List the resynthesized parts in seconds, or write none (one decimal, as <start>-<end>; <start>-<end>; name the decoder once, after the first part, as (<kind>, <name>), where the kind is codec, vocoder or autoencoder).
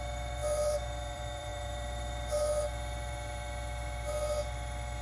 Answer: 0.0-0.4 (vocoder, BigVGAN v2); 1.1-5.0